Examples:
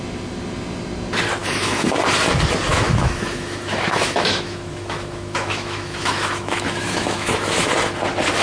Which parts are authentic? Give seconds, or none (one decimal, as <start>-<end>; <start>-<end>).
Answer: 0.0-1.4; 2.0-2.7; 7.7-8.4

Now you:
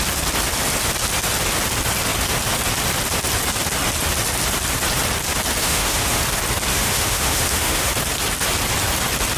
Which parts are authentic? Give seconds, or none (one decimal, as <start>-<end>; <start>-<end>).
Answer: 0.0-5.6; 6.2-6.7; 7.9-9.4

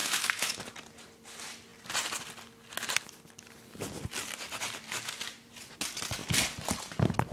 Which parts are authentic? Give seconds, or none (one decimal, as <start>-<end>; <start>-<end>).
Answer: 0.6-7.3

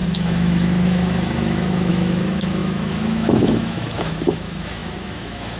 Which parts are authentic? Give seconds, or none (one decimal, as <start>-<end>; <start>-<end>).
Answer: none

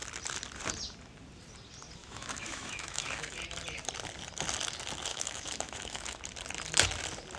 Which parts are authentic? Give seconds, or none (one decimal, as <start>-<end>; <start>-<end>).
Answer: 0.0-2.0; 3.3-5.1; 6.2-7.4

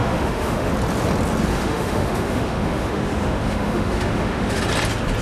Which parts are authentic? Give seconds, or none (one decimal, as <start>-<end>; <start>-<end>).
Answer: 0.7-1.5; 4.6-5.2

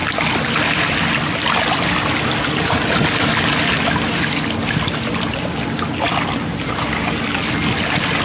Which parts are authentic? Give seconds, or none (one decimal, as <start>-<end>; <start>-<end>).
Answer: 0.0-8.2

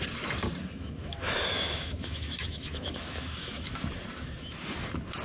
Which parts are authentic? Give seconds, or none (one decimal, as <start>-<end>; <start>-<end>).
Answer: 0.0-0.6; 3.7-5.2